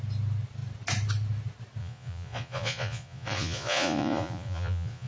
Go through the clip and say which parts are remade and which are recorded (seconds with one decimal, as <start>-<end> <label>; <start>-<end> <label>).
0.0-1.8 recorded; 1.8-5.1 remade